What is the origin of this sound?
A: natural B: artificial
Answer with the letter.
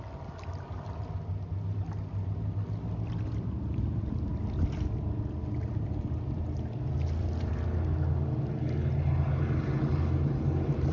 A